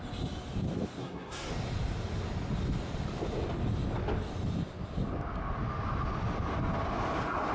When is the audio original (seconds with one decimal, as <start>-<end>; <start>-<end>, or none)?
0.0-1.0; 1.5-7.5